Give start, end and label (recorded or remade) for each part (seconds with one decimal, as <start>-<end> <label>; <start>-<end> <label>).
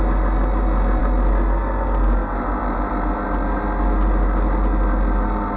0.0-5.6 recorded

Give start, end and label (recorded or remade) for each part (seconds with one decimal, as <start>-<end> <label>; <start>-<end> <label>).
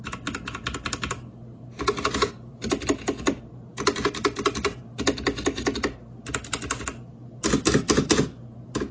0.0-8.9 recorded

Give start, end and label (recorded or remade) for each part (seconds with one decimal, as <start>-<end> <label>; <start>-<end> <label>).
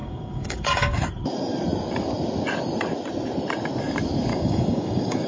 0.0-1.1 remade; 1.1-4.3 recorded; 4.3-5.3 remade